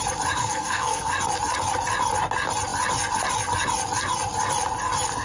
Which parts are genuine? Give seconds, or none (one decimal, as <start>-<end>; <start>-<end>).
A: 0.0-0.4; 1.1-5.2